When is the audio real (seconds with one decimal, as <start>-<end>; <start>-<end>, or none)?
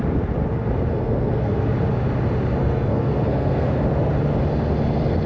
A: 0.0-0.9; 1.7-2.6; 3.8-5.3